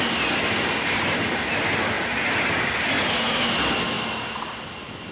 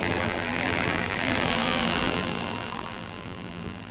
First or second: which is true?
first